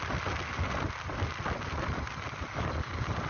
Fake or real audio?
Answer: real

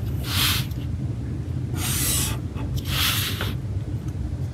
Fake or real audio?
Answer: real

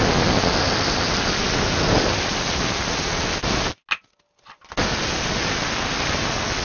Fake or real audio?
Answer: real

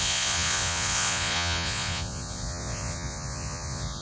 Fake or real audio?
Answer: fake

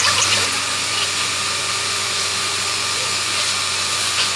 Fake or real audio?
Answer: fake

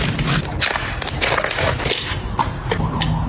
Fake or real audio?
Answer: real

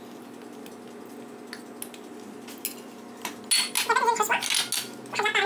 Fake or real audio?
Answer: real